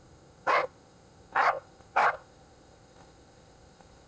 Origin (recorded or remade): remade